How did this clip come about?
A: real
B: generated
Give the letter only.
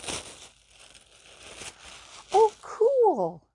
A